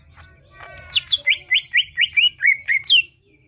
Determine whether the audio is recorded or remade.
recorded